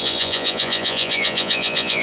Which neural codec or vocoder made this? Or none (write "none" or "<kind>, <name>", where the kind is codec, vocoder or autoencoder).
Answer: vocoder, Vocos